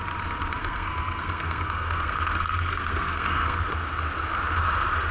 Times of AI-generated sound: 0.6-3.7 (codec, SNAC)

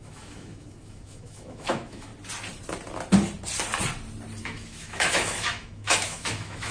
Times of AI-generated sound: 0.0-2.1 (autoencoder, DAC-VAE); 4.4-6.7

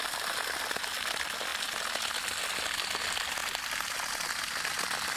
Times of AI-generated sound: none

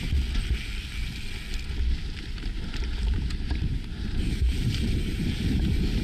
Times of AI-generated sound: 2.5-5.6 (vocoder, BigVGAN v2)

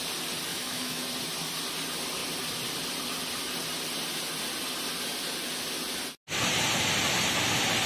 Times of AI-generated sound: 0.5-1.0 (autoencoder, DAC-VAE)

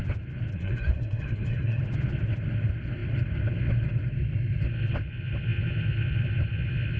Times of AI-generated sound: 0.5-1.8 (codec, SNAC)